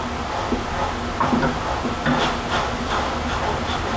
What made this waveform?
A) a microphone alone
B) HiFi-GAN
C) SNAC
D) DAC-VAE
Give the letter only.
A